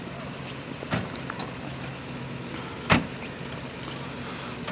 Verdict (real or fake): real